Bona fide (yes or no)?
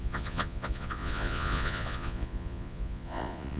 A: no